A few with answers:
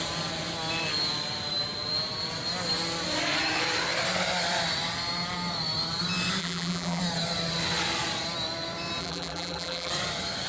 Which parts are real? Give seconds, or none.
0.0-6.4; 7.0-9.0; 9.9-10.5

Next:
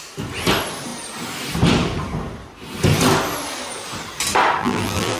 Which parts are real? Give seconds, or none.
0.0-4.6

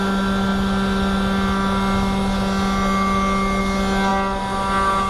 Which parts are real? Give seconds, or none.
0.0-5.1

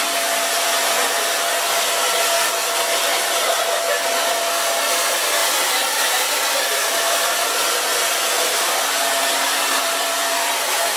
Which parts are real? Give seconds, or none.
0.0-5.4; 7.5-10.2

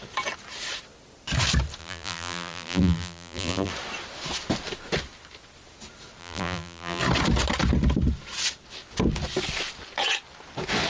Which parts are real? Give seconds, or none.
0.0-1.8; 3.7-6.2; 7.0-10.9

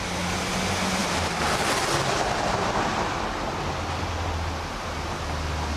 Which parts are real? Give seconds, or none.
0.0-5.8

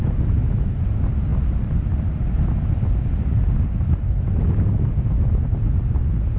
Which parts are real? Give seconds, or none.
0.0-6.4